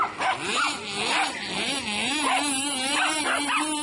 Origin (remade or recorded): recorded